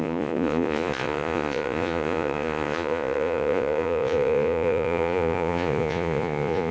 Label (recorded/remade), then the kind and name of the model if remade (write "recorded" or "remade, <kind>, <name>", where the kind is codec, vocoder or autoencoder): remade, vocoder, Vocos